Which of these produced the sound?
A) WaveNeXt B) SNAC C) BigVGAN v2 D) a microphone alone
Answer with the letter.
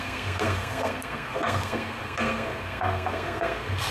B